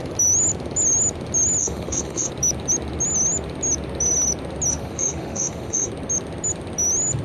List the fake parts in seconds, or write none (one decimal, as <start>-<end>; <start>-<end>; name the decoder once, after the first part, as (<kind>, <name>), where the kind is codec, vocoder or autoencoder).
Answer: 1.6-2.3 (autoencoder, DAC-VAE); 4.7-5.9